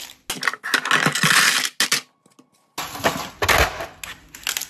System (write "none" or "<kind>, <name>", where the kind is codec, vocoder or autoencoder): none